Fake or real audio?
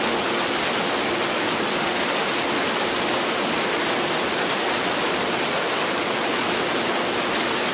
real